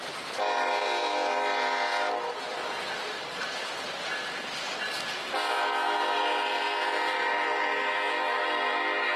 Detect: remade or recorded recorded